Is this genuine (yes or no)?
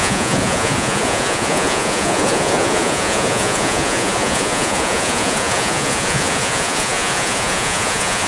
no